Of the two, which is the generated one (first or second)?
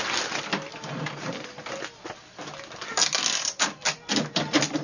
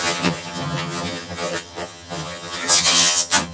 second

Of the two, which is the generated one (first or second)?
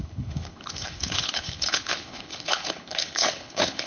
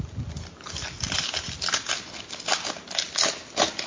first